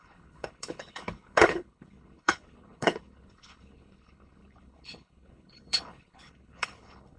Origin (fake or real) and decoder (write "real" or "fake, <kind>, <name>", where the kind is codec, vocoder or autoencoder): fake, codec, HILCodec